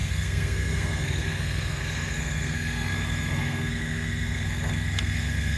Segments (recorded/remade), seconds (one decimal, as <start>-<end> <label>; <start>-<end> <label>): 0.0-5.6 remade